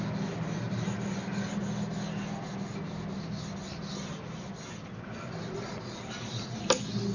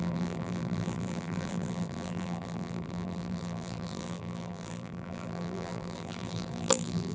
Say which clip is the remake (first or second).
second